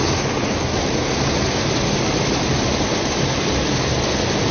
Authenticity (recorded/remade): recorded